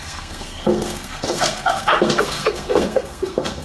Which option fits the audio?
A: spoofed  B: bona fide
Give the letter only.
A